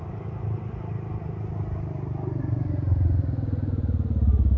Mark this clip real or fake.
real